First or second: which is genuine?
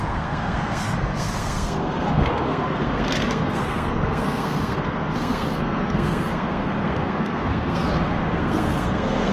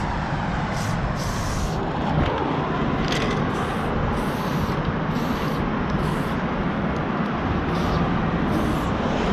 second